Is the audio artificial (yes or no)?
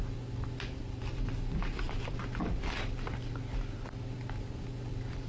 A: no